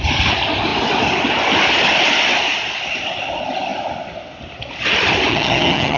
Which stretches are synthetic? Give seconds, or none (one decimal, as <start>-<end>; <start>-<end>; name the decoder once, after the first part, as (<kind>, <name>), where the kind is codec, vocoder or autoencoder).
5.3-6.0 (vocoder, HiFi-GAN)